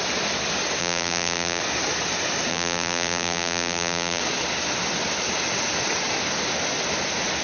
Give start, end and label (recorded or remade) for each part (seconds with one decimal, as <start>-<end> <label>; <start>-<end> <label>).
0.0-0.8 recorded; 0.8-1.6 remade; 1.6-2.5 recorded; 2.5-4.2 remade; 4.2-7.4 recorded